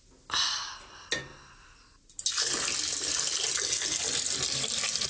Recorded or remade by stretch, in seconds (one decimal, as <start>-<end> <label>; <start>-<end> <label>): 0.0-5.1 recorded